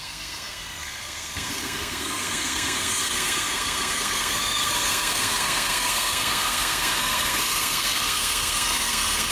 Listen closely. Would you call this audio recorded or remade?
remade